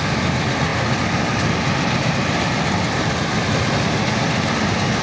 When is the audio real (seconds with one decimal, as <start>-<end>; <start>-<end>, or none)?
0.0-5.0